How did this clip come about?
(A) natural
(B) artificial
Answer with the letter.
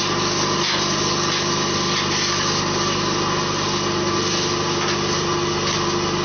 A